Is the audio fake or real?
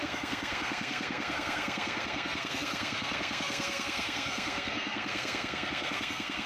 fake